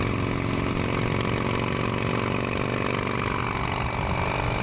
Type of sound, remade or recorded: recorded